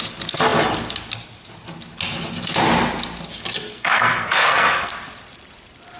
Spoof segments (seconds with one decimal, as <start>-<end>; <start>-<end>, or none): 3.7-4.9